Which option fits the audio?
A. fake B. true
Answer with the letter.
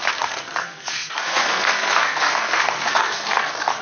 A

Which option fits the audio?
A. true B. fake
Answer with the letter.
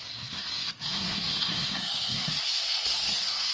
B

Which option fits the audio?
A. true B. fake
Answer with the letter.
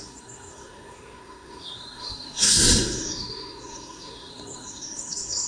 B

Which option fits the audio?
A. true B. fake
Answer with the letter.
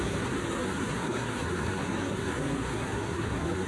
B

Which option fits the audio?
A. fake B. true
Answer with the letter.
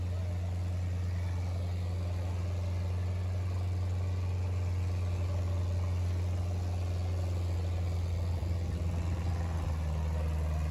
B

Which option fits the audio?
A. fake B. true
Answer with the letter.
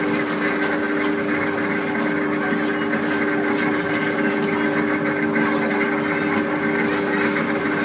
B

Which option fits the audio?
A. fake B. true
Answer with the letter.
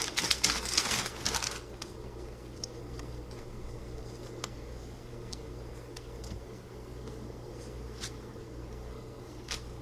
A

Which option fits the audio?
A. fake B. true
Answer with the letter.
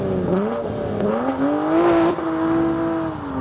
B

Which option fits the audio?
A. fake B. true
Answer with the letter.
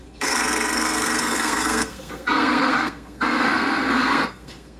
A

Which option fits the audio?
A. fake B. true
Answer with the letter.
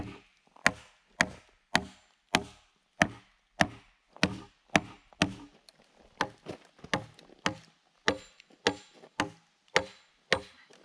B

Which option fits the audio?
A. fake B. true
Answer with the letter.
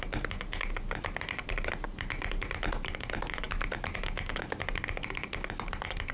B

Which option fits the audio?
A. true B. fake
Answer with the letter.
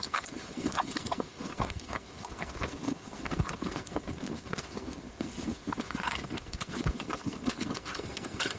B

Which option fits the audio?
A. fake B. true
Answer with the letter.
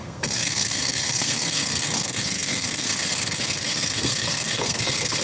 A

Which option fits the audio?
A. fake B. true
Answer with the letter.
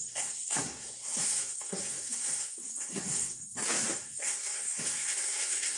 A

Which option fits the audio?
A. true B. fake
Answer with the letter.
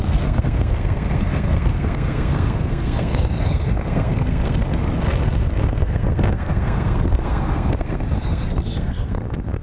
B